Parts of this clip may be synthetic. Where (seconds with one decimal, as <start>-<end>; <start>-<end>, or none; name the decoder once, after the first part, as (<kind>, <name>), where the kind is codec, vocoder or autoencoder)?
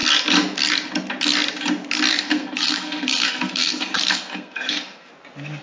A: 2.1-5.1 (codec, SNAC)